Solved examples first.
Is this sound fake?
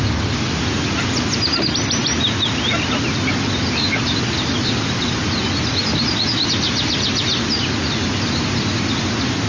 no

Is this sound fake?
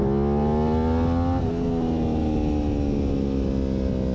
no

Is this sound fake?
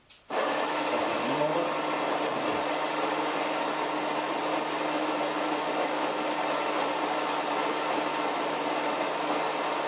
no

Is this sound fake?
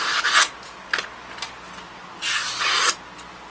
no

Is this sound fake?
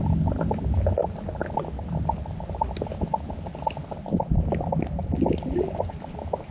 no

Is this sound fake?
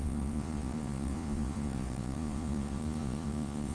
yes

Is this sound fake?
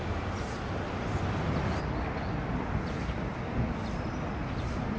no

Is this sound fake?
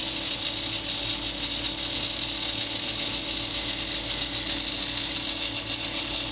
no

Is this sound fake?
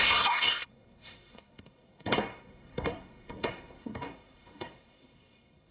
yes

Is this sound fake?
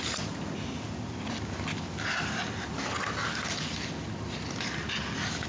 no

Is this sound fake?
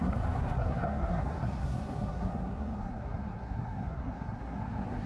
yes